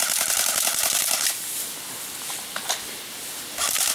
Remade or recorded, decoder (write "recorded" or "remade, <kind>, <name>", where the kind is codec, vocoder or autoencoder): recorded